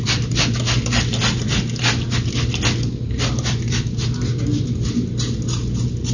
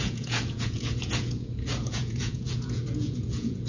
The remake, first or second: second